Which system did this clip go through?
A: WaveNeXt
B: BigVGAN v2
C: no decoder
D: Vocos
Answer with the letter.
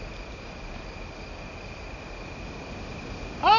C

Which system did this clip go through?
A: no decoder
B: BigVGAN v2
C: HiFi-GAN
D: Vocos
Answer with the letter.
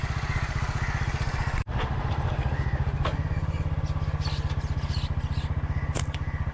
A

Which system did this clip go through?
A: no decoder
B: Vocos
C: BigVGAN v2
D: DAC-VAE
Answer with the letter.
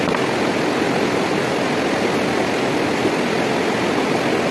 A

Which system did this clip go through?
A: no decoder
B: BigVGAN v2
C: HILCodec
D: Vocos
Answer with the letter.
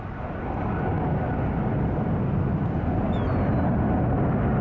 A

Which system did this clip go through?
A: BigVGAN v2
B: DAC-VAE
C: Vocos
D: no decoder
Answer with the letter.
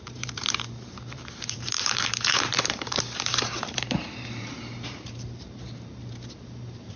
A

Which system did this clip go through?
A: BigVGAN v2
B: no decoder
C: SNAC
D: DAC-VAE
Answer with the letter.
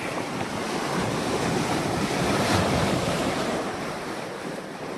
A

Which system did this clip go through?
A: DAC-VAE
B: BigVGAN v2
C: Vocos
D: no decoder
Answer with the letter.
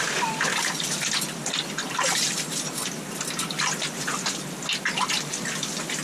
D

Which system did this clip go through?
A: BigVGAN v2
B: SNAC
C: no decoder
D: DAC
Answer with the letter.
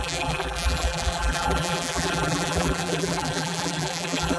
A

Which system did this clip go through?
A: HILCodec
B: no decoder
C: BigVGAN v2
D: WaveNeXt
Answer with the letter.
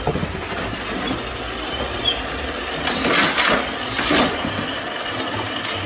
C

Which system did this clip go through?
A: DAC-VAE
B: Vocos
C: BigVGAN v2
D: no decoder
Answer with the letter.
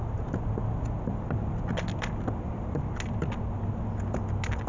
D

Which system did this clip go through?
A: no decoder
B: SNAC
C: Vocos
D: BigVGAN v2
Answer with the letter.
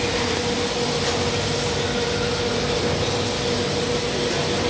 A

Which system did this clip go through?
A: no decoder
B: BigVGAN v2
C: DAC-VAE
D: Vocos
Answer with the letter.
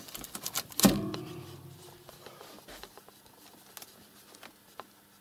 A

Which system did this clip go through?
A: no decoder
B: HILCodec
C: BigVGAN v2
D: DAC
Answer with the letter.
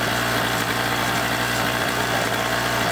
C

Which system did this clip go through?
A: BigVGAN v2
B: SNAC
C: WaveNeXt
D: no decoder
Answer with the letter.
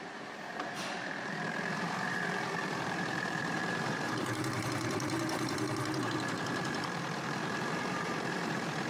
A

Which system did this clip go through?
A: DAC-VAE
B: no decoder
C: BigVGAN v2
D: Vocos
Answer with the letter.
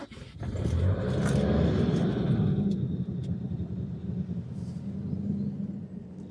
B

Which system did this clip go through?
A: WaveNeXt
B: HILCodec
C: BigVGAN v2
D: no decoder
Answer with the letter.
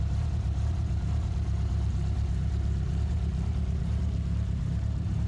C